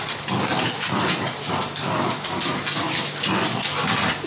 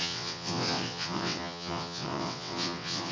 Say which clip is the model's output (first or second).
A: second